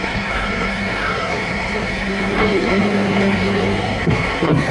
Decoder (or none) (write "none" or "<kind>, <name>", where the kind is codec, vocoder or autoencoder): codec, SNAC